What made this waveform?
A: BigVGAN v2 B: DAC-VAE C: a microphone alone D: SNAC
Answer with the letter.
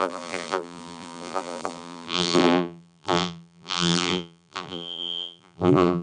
A